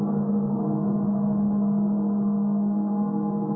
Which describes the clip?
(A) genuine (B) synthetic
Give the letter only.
B